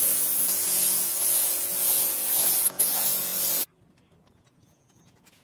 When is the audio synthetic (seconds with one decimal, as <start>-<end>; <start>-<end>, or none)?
0.0-3.3; 4.2-5.4